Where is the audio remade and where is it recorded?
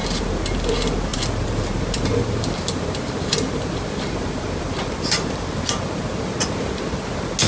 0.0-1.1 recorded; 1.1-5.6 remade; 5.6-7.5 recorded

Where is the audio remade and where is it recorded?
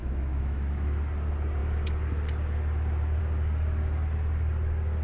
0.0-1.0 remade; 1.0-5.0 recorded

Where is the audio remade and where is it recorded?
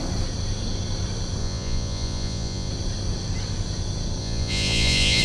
0.0-1.4 recorded; 1.4-2.7 remade; 2.7-4.2 recorded; 4.2-5.2 remade